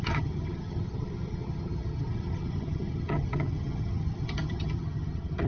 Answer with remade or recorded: remade